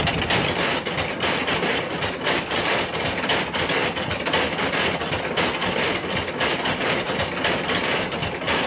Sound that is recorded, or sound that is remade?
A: recorded